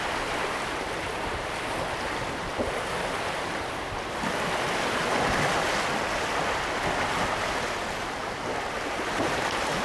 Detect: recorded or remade recorded